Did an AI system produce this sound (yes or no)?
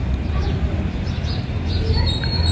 no